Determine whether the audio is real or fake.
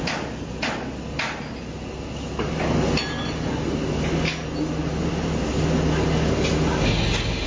real